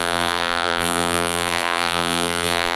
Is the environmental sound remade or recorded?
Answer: remade